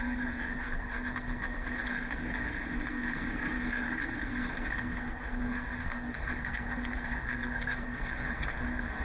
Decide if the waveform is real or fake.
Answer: fake